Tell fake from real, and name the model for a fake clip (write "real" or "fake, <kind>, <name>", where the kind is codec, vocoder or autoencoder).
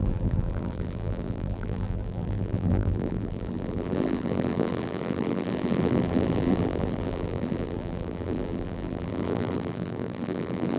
fake, vocoder, BigVGAN v2